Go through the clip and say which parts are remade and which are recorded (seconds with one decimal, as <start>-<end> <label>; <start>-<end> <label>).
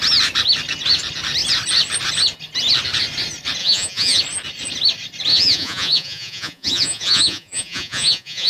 0.0-3.6 recorded; 3.6-4.2 remade; 4.2-5.3 recorded; 5.3-8.5 remade